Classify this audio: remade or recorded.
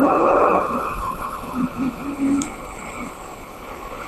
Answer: remade